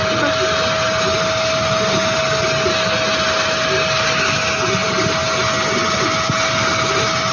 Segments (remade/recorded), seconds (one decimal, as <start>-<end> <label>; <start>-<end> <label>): 0.0-7.3 recorded